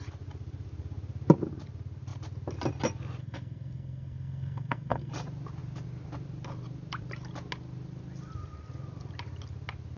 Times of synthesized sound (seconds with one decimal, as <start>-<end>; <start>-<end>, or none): 3.2-5.1